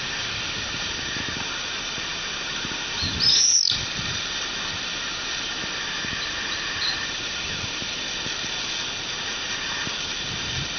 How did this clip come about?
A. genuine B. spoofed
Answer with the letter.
B